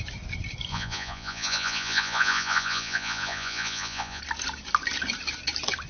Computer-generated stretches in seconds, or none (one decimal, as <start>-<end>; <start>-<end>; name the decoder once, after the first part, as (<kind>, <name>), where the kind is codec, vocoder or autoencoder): 0.7-4.2 (vocoder, Vocos)